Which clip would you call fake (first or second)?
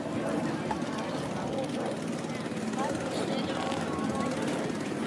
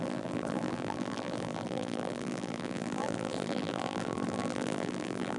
second